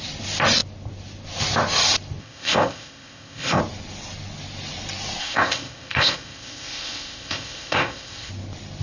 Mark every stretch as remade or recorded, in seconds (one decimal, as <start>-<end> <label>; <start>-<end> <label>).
0.0-2.2 recorded; 2.2-3.6 remade; 3.6-5.2 recorded; 5.2-8.3 remade; 8.3-8.8 recorded